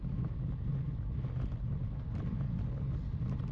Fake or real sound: real